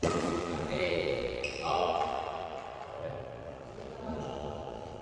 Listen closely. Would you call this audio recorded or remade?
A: remade